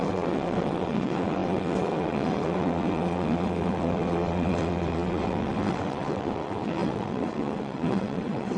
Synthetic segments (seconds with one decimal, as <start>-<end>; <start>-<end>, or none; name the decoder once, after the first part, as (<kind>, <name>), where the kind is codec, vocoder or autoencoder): 0.0-8.6 (vocoder, WaveNeXt)